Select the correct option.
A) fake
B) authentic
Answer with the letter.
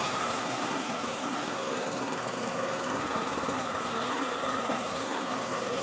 A